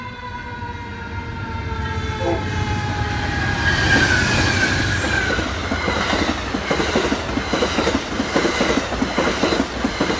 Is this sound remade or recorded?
recorded